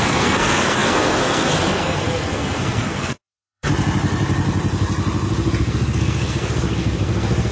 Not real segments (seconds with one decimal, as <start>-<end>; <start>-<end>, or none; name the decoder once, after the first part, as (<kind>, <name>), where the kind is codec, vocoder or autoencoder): 0.0-3.7 (codec, SNAC); 5.6-7.5